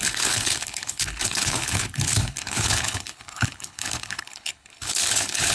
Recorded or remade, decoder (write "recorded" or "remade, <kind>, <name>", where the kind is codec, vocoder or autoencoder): remade, codec, HILCodec